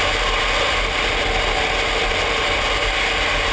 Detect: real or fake real